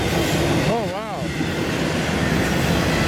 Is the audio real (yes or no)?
yes